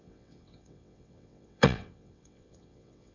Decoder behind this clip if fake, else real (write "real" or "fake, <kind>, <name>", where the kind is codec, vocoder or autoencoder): fake, vocoder, WaveNeXt